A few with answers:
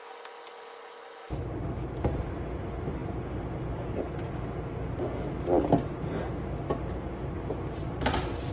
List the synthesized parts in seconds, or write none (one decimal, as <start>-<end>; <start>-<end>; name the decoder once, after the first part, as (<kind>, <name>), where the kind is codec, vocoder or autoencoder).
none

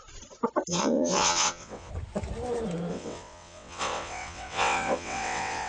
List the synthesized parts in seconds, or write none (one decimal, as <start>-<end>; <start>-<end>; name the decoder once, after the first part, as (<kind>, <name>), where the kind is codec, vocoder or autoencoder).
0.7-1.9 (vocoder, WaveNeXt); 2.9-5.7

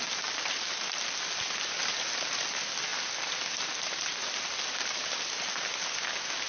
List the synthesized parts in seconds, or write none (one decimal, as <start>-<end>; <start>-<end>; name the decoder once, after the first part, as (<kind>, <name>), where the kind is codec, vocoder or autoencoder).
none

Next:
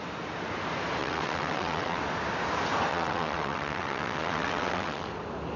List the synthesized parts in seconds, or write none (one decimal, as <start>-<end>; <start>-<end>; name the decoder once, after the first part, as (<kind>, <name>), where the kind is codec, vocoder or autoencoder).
1.0-2.0 (vocoder, WaveNeXt); 2.9-5.1

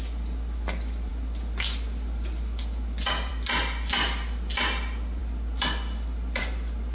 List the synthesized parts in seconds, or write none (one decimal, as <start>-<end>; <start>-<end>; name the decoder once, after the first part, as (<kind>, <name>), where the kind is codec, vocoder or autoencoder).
none

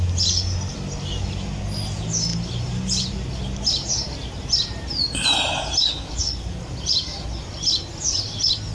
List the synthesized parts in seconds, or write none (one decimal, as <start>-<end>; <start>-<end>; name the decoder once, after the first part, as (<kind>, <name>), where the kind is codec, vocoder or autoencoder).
none

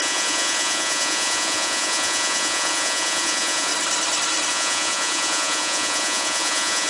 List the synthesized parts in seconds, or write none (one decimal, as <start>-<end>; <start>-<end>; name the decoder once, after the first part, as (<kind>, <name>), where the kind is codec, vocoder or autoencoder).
0.0-3.7 (vocoder, Vocos); 4.5-6.9

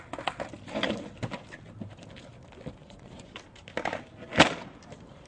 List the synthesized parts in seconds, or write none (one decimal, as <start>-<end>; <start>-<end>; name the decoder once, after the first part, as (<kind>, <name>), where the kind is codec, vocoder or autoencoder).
2.8-3.3 (vocoder, Vocos)